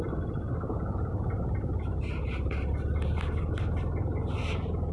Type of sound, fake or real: real